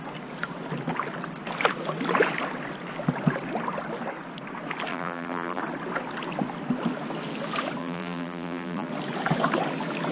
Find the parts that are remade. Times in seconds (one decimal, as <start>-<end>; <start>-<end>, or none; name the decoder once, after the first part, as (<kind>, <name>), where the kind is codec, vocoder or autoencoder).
4.9-5.6 (vocoder, BigVGAN v2); 7.8-8.9